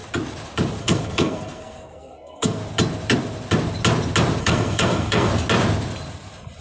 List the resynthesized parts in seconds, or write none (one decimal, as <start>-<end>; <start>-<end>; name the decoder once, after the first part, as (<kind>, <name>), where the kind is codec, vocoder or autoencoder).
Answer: 0.8-2.6 (codec, SNAC); 4.4-5.3